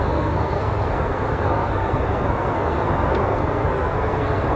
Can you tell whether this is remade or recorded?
remade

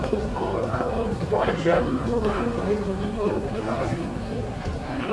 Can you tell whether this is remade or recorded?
remade